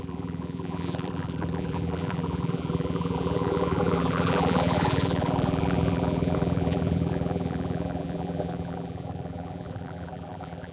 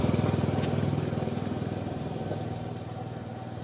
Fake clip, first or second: first